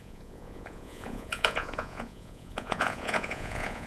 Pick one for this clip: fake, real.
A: fake